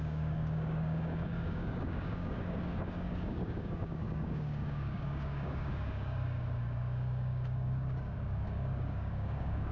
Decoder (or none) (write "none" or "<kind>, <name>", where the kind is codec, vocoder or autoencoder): codec, DAC